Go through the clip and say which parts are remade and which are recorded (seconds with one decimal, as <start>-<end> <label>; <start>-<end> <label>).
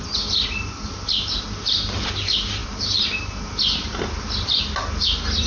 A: 0.0-5.5 recorded